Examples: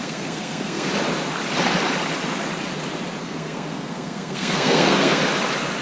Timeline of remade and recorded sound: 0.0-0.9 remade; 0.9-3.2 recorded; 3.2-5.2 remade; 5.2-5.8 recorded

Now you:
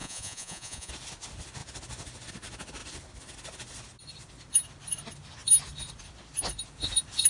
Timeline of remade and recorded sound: 0.0-0.9 remade; 0.9-7.3 recorded

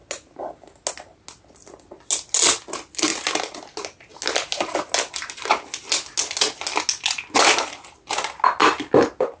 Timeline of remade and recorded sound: 0.0-9.4 recorded